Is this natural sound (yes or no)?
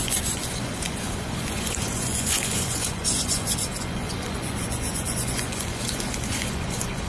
no